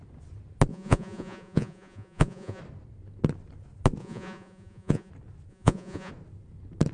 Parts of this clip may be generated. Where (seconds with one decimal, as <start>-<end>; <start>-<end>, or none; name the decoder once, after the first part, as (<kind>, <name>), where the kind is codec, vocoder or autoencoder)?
0.7-2.6 (vocoder, Vocos); 4.0-5.1; 5.5-6.1